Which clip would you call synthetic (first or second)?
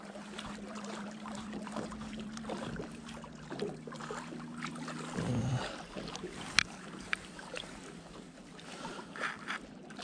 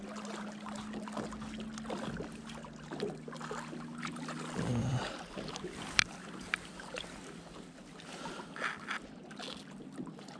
first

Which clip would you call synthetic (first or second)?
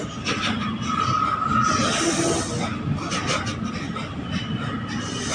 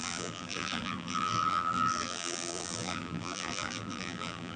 second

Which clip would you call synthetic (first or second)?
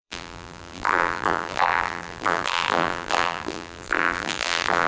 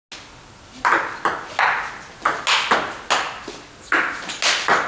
first